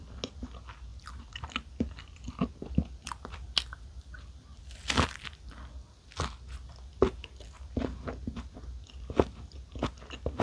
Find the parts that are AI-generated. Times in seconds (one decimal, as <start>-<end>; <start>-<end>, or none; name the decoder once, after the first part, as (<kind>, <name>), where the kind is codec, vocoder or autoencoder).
none